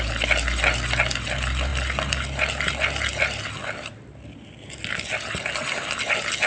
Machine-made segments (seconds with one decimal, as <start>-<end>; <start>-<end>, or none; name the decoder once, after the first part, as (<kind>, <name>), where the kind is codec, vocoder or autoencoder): none